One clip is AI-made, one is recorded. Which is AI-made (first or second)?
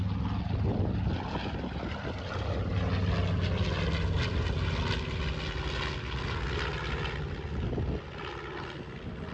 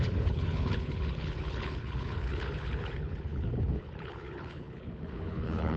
second